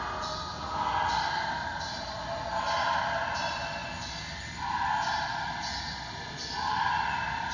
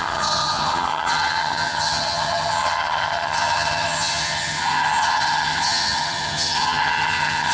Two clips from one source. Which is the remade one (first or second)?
second